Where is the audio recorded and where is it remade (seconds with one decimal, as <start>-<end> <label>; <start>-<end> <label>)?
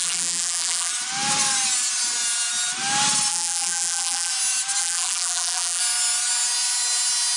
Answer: 0.0-0.9 remade; 0.9-3.3 recorded; 3.3-4.3 remade; 4.3-4.8 recorded; 4.8-5.8 remade; 5.8-7.4 recorded